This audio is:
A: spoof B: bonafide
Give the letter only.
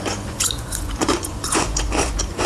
A